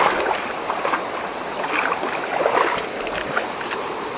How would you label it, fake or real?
real